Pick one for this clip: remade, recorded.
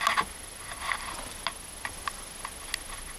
recorded